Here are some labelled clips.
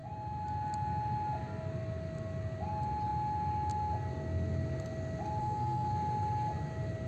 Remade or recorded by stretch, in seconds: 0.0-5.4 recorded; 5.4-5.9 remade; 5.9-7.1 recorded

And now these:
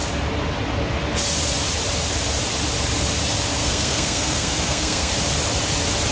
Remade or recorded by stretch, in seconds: 0.0-3.6 recorded; 3.6-5.1 remade; 5.1-6.1 recorded

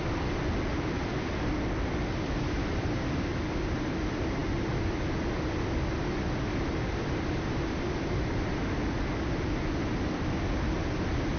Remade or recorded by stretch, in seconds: 0.0-11.4 recorded

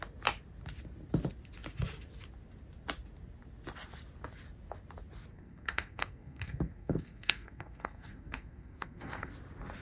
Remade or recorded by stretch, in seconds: 0.0-5.3 recorded; 5.3-9.3 remade; 9.3-9.8 recorded

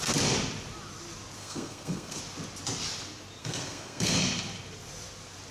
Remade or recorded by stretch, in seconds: 0.0-1.4 recorded; 1.4-2.2 remade; 2.2-3.4 recorded; 3.4-4.2 remade; 4.2-5.5 recorded